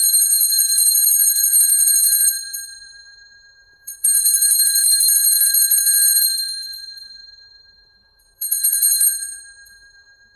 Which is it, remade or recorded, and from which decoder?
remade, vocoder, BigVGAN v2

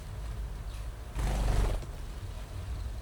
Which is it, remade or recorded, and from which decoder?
recorded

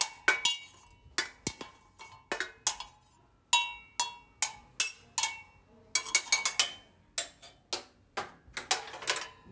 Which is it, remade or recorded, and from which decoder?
recorded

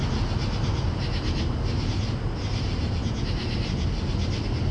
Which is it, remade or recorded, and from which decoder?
recorded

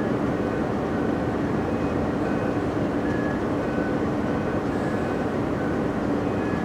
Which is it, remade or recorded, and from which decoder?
remade, vocoder, BigVGAN v2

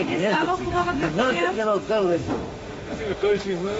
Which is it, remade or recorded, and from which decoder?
remade, autoencoder, DAC-VAE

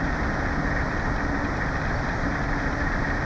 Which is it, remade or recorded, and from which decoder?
recorded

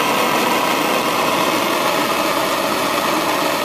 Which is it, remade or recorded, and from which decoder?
recorded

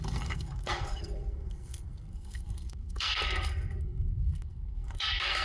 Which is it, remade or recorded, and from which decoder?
remade, codec, SNAC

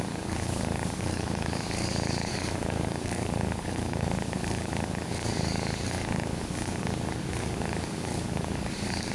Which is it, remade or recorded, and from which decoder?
remade, codec, DAC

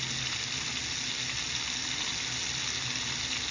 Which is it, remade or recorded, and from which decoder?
recorded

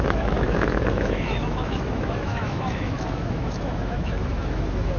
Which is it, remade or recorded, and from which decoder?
remade, autoencoder, DAC-VAE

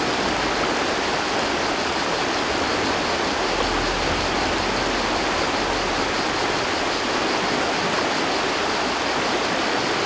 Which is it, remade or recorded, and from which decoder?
recorded